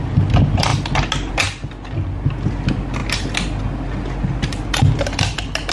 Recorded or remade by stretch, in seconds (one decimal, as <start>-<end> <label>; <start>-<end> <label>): 0.0-5.7 recorded

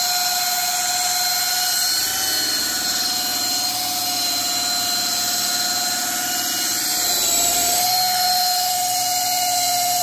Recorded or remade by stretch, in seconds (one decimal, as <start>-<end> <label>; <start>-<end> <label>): 0.0-10.0 recorded

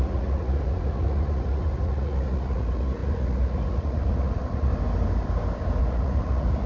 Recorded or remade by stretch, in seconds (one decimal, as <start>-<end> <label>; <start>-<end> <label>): 0.0-4.7 remade; 4.7-5.8 recorded; 5.8-6.7 remade

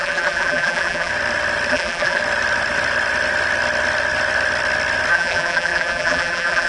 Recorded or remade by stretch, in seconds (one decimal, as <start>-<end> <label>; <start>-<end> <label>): 0.0-1.1 remade; 1.1-1.7 recorded; 1.7-2.2 remade; 2.2-5.1 recorded; 5.1-6.7 remade

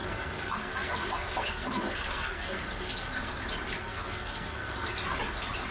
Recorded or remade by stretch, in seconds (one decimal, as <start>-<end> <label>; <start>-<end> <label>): 0.0-3.4 remade; 3.4-3.8 recorded; 3.8-4.9 remade; 4.9-5.7 recorded

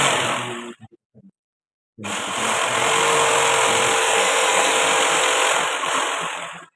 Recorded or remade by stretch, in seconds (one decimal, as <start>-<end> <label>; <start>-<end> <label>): 0.0-4.0 recorded; 4.0-4.8 remade; 4.8-6.8 recorded

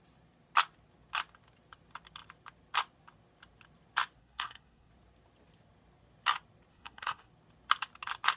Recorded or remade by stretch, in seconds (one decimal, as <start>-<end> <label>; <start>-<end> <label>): 0.0-4.2 recorded; 4.2-4.9 remade; 4.9-6.7 recorded; 6.7-7.3 remade; 7.3-8.4 recorded

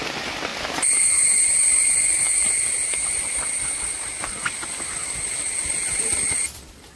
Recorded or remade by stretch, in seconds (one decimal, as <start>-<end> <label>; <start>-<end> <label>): 0.0-7.0 recorded